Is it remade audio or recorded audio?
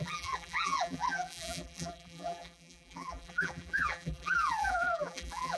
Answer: remade